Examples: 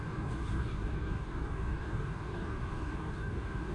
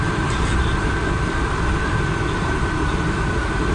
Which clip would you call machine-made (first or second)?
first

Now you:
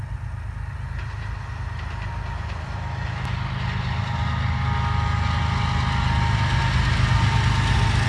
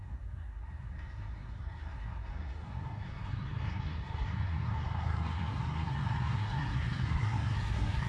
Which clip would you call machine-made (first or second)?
second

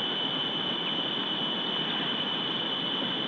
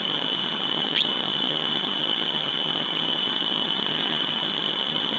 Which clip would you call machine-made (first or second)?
second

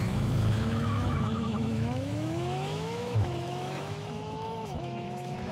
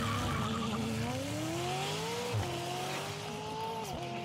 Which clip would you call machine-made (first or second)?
first